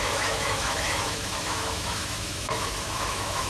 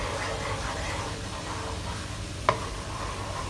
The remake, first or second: first